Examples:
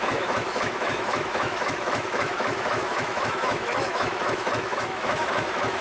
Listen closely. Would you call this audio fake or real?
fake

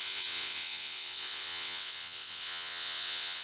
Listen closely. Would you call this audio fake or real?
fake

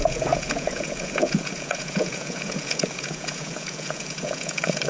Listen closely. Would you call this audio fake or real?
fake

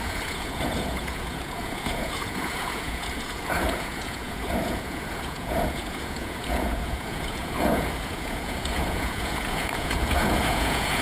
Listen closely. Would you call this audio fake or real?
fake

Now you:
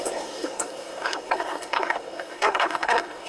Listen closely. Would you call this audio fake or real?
fake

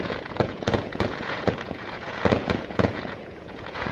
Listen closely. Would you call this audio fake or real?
fake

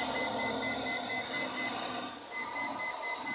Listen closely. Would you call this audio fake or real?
real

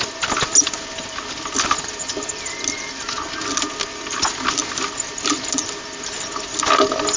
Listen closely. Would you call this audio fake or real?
real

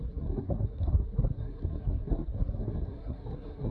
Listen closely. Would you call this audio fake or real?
fake